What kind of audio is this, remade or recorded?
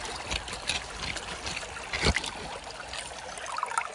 recorded